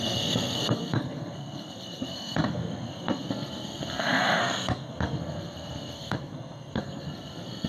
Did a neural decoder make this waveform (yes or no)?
yes